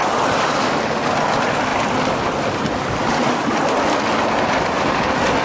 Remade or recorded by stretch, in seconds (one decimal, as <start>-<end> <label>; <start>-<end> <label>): 0.0-0.6 remade; 0.6-5.4 recorded